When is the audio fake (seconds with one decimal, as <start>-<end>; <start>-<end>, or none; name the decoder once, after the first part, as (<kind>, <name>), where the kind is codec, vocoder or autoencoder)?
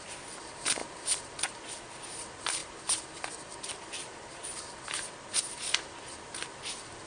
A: 0.8-1.4 (vocoder, BigVGAN v2); 2.6-5.1